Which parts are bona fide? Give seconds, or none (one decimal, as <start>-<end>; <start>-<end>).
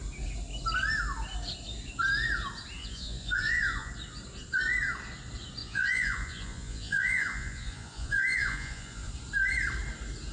0.0-2.8; 3.9-5.6; 9.1-10.3